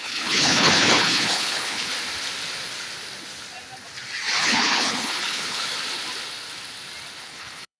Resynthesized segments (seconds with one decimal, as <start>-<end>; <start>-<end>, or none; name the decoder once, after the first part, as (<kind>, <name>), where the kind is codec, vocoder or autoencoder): 0.0-1.9 (codec, HILCodec); 4.4-5.6; 7.2-7.8